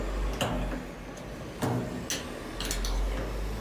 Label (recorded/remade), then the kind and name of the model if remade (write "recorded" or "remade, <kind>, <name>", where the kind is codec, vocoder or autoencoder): recorded